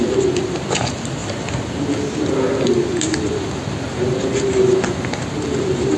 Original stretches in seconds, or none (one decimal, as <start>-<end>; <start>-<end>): 0.0-6.0